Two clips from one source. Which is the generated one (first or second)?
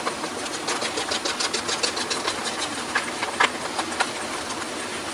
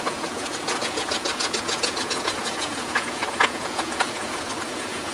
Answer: second